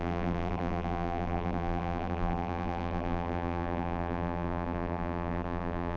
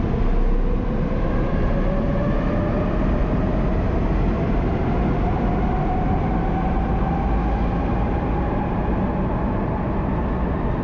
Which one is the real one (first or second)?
second